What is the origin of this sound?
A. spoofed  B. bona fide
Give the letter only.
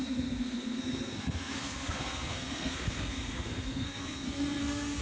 A